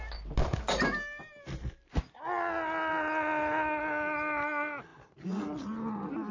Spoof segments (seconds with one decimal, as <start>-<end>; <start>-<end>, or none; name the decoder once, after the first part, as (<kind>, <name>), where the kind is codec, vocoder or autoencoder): none